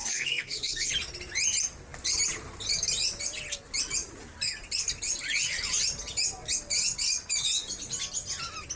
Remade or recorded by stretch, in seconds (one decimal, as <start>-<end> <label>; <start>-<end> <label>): 0.0-0.9 remade; 0.9-8.8 recorded